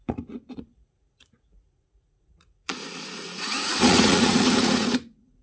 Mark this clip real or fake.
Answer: fake